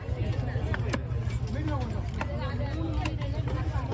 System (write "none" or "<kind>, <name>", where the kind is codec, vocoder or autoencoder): none